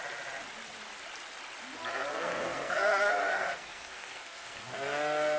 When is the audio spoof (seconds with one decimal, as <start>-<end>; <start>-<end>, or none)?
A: 2.1-5.4